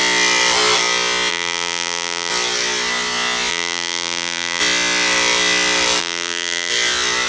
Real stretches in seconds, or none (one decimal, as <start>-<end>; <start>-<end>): 0.0-1.3; 2.3-3.5; 4.6-6.0; 6.7-7.3